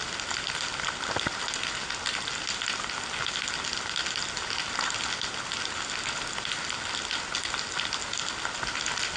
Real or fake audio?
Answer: real